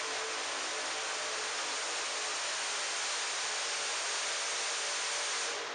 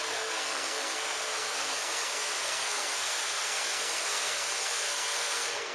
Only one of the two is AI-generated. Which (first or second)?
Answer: second